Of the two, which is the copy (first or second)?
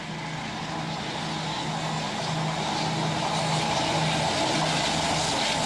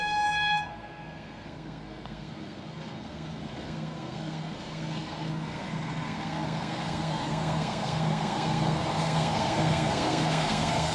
second